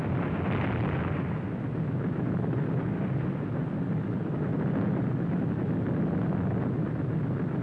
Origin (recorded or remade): recorded